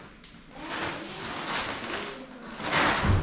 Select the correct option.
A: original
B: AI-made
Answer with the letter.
A